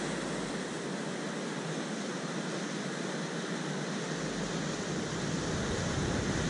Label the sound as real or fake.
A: real